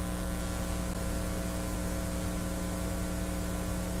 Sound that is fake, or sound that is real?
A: real